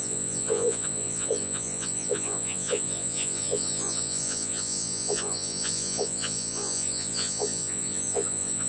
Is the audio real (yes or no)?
no